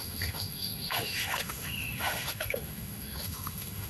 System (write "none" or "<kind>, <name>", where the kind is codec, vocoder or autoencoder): autoencoder, DAC-VAE